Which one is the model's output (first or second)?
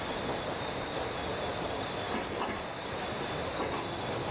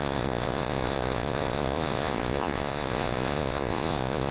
second